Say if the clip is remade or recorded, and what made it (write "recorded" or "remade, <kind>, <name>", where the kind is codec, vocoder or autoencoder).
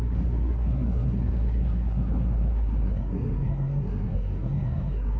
remade, codec, SNAC